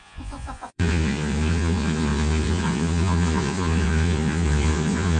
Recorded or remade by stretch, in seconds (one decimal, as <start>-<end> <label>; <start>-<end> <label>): 0.0-5.2 remade